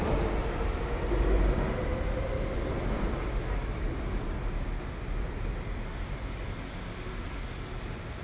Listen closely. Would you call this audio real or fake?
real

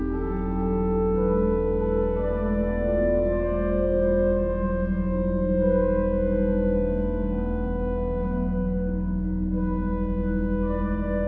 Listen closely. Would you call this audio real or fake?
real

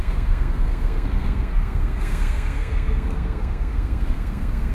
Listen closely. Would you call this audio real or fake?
fake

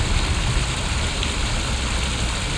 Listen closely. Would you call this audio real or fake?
real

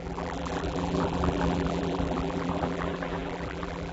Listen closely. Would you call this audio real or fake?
fake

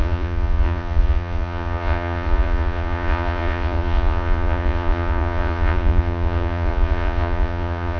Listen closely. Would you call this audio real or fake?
fake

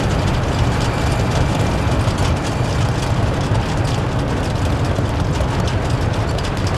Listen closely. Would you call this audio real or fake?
real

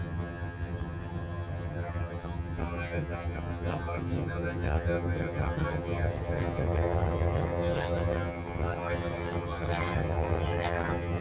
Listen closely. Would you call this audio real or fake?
fake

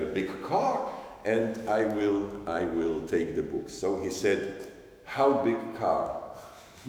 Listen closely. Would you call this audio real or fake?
fake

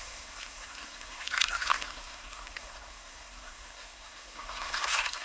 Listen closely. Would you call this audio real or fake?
fake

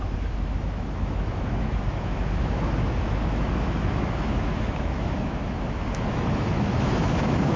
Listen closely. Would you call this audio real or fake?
fake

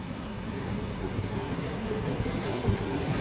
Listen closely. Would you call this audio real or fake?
fake